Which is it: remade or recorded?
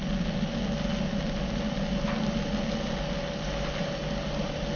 recorded